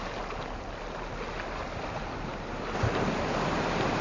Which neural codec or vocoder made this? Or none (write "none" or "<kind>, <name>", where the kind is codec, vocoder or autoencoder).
none